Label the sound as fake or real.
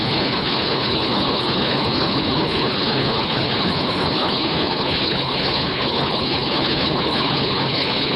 fake